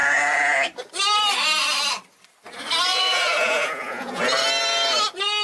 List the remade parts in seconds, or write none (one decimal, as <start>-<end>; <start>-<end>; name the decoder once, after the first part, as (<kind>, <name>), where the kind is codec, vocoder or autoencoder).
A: 2.9-4.2 (vocoder, Vocos)